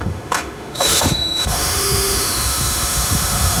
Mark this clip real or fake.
fake